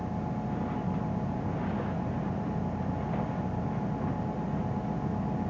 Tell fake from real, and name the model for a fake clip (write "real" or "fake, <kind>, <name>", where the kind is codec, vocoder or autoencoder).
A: real